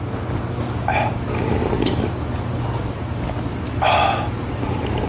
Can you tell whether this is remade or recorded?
recorded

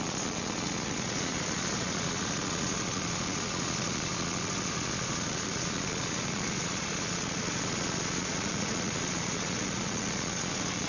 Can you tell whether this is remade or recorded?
remade